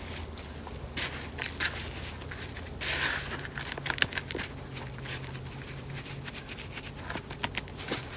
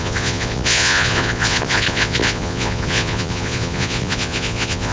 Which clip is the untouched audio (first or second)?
first